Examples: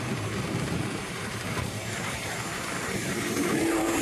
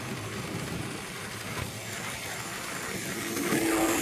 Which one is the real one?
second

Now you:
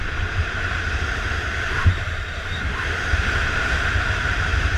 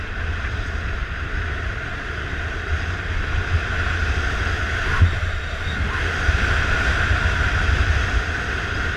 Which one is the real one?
second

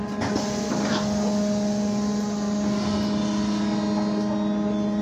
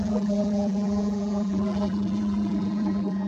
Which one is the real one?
first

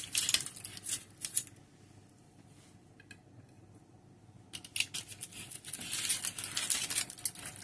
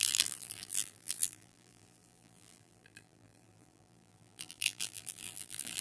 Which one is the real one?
first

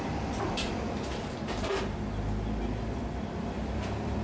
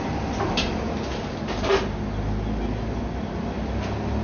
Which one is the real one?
second